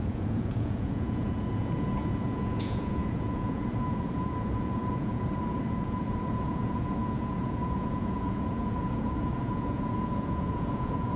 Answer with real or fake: fake